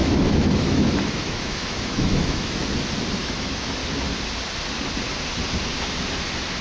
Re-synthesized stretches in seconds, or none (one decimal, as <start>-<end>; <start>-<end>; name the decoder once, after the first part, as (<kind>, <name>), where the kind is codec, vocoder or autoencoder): 0.0-2.6 (autoencoder, DAC-VAE); 3.2-3.8